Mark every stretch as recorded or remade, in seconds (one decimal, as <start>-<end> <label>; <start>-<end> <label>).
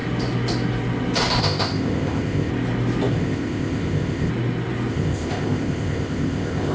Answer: 0.0-1.4 recorded; 1.4-2.5 remade; 2.5-3.1 recorded; 3.1-4.3 remade; 4.3-4.9 recorded; 4.9-6.7 remade